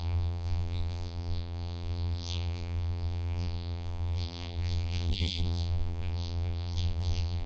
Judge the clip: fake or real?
fake